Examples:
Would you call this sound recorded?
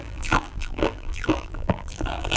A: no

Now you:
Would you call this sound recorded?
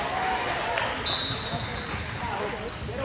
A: yes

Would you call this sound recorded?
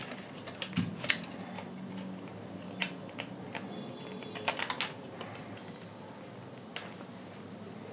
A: yes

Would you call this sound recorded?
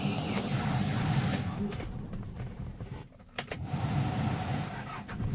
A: no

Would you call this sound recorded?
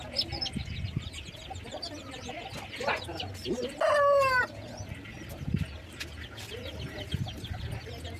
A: yes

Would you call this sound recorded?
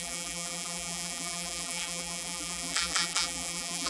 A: no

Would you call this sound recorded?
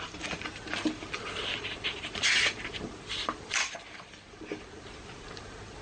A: no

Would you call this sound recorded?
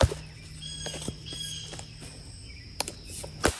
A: yes